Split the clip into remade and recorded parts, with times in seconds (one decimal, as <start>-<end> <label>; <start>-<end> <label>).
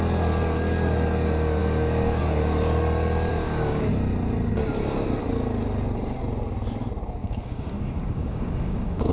0.0-1.6 recorded; 1.6-2.2 remade; 2.2-3.3 recorded; 3.3-3.9 remade; 3.9-7.2 recorded; 7.2-9.1 remade